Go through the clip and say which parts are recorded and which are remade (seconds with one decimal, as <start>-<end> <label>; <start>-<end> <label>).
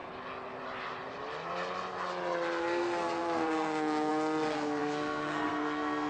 0.0-2.6 recorded; 2.6-6.1 remade